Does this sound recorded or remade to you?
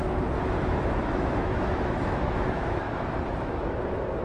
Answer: remade